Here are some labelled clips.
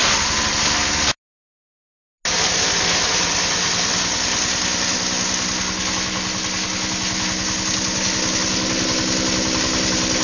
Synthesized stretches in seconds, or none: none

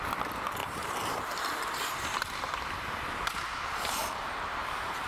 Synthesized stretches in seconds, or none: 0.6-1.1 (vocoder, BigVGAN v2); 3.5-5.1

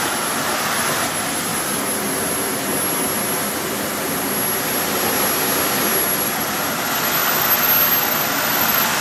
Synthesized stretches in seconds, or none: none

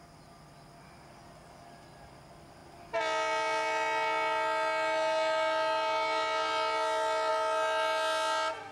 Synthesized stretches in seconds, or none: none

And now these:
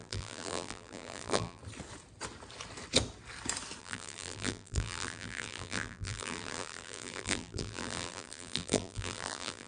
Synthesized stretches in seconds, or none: 0.0-1.6 (vocoder, BigVGAN v2); 3.8-9.7

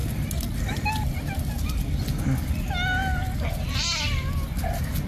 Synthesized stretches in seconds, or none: none

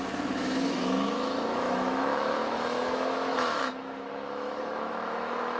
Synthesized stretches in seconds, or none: 0.0-5.6 (autoencoder, DAC-VAE)

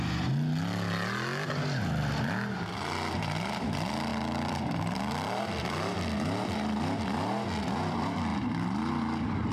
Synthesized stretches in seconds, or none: 4.1-5.4 (vocoder, BigVGAN v2); 8.3-8.9